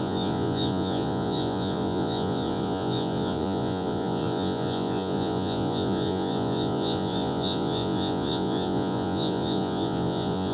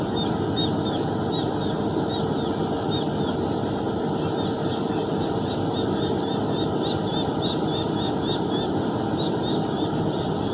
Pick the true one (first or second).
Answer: second